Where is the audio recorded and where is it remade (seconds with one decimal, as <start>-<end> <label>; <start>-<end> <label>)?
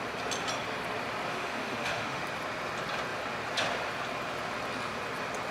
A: 0.0-1.3 recorded; 1.3-2.2 remade; 2.2-5.5 recorded